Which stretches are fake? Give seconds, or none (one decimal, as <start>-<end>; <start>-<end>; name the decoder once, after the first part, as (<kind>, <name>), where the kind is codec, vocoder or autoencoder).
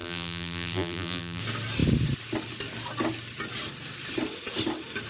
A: 0.0-1.4 (vocoder, BigVGAN v2)